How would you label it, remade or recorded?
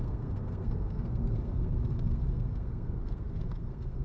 remade